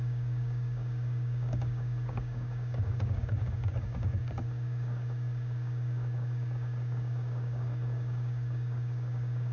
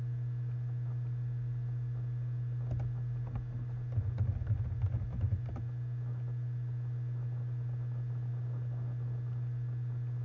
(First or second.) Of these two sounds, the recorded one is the second